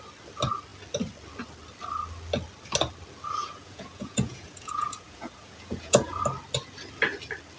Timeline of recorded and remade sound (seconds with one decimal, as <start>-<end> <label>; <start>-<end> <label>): 0.0-3.4 recorded; 3.4-6.2 remade; 6.2-7.6 recorded